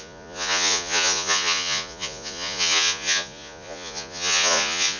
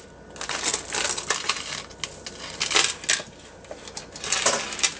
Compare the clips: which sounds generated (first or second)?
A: first